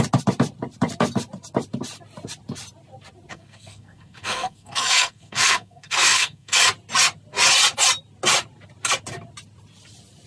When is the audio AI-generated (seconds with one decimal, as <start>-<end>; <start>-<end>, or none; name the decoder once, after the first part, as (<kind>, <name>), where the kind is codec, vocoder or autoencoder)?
3.3-6.6 (codec, SNAC)